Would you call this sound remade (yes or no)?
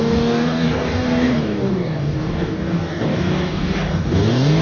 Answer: yes